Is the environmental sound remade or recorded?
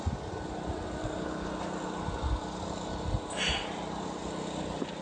recorded